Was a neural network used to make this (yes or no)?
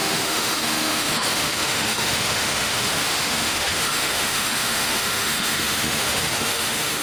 yes